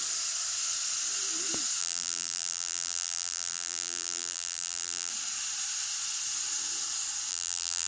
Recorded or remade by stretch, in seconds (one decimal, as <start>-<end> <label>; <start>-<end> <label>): 0.0-1.8 recorded; 1.8-5.1 remade; 5.1-7.3 recorded; 7.3-7.9 remade

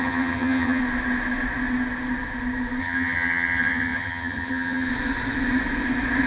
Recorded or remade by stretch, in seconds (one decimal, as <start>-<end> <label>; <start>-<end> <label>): 0.0-0.8 remade; 0.8-2.8 recorded; 2.8-4.9 remade; 4.9-6.3 recorded

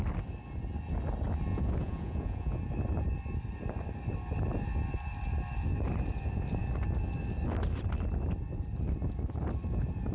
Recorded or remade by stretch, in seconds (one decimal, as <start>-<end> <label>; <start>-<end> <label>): 0.0-1.5 recorded; 1.5-2.6 remade; 2.6-10.1 recorded